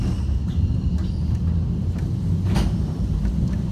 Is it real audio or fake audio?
real